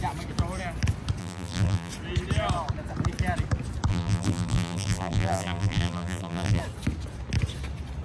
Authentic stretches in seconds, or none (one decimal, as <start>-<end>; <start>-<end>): 0.0-1.2; 1.9-3.9; 6.6-8.0